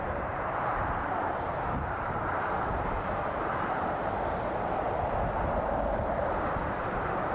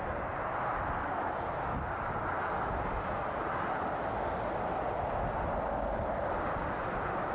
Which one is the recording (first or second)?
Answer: second